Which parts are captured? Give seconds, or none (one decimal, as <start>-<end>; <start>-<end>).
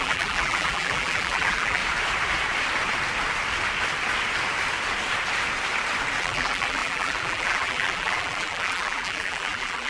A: 1.8-6.2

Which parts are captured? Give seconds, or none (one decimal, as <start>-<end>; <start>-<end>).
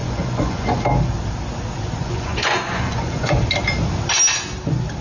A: 0.8-2.0; 3.4-5.0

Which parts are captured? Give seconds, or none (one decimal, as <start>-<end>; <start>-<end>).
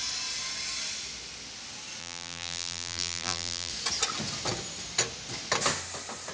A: 0.0-2.0; 3.7-6.3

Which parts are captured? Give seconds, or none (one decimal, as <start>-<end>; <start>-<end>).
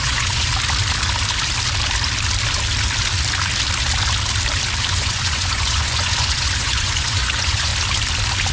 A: 0.5-4.9; 7.7-8.5